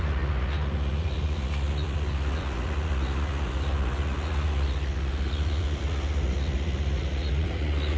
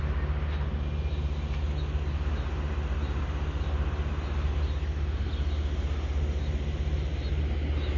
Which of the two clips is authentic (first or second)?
second